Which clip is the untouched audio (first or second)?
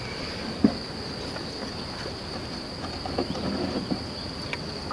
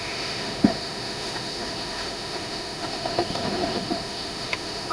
first